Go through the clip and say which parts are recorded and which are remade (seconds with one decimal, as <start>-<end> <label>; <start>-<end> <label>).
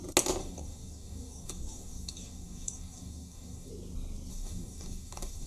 0.0-0.4 recorded; 0.4-3.7 remade; 3.7-4.3 recorded; 4.3-5.5 remade